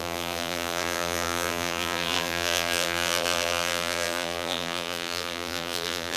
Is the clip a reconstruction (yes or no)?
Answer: yes